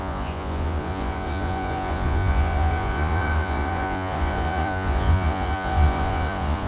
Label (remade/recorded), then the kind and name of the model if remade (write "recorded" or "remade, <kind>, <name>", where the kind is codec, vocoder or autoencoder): remade, vocoder, Vocos